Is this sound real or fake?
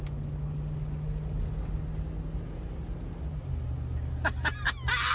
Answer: real